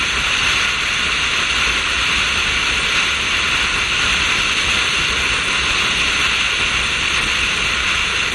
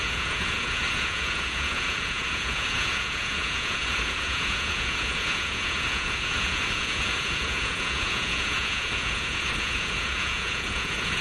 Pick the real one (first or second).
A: first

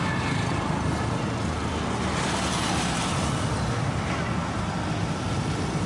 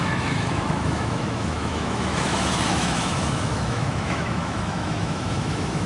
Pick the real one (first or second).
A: first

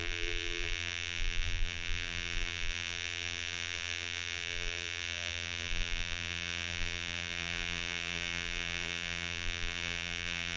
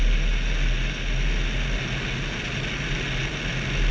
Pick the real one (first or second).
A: second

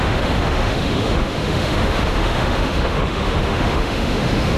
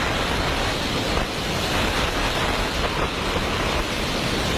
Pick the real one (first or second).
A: second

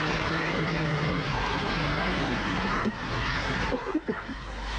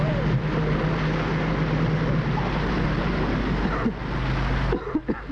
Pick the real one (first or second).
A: second